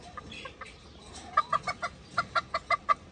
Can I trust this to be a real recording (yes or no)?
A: yes